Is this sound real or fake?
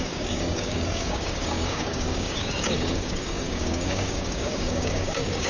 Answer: fake